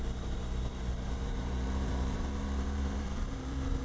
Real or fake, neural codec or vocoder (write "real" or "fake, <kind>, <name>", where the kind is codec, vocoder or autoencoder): fake, vocoder, BigVGAN v2